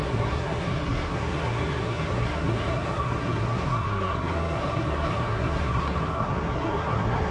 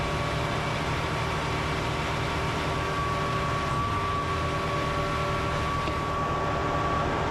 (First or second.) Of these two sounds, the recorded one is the second